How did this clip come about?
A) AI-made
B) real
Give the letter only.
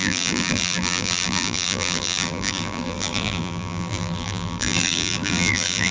A